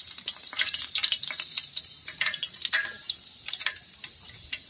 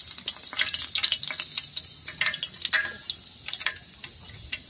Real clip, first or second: second